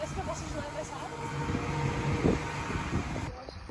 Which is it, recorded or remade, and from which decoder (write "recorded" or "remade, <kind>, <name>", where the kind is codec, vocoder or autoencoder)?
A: recorded